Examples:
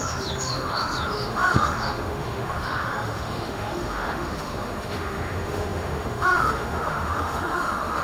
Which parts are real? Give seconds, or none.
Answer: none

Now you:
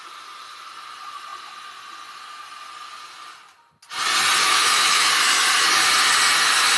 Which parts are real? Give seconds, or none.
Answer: 0.0-4.4; 5.1-6.8

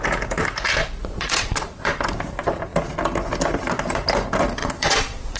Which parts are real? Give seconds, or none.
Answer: 0.0-0.8; 2.0-4.6

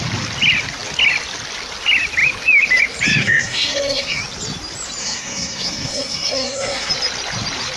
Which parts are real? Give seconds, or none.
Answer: 0.0-3.2; 4.2-5.0; 6.9-7.8